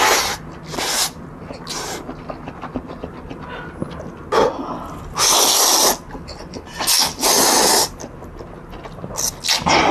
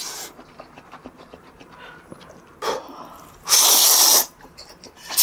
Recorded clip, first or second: first